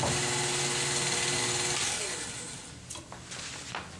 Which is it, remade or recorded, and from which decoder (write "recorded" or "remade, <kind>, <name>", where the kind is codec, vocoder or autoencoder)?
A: recorded